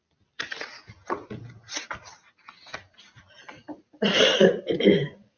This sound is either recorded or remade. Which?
recorded